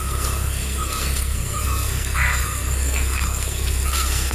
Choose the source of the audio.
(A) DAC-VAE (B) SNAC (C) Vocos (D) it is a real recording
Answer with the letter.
B